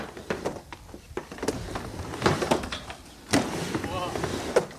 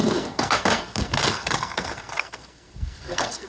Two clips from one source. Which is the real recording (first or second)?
first